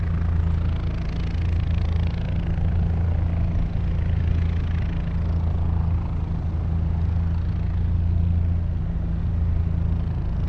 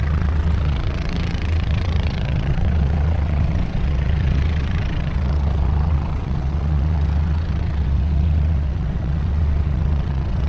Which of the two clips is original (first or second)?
first